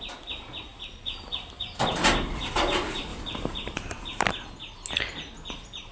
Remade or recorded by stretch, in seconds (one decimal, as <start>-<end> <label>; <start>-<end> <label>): 0.0-3.1 recorded; 3.1-4.2 remade; 4.2-5.9 recorded